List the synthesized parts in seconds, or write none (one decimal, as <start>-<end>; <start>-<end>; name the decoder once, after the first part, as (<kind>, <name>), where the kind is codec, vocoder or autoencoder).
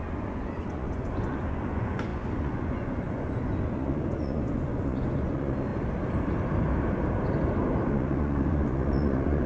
0.0-5.7 (vocoder, Vocos); 7.9-9.5